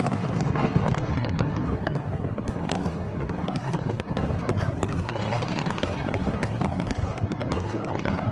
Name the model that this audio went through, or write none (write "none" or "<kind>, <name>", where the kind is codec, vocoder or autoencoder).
codec, SNAC